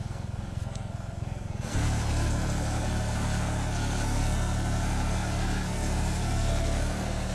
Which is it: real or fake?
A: fake